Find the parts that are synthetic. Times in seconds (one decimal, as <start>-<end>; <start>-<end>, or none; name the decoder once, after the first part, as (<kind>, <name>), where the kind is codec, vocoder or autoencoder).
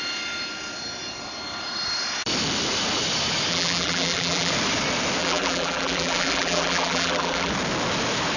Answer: 3.5-4.5 (vocoder, BigVGAN v2); 5.2-7.5